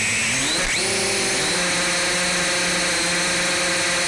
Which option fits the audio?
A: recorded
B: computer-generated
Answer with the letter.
A